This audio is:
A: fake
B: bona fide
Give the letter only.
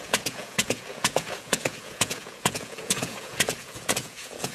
A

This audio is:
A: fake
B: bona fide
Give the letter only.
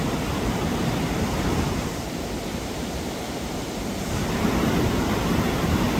A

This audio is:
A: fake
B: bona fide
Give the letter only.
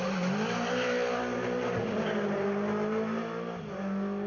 B